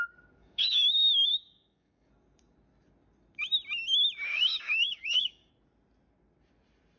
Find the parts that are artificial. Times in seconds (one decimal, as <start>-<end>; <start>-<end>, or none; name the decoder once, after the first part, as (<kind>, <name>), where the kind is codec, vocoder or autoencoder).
0.4-2.1 (codec, DAC); 4.3-5.5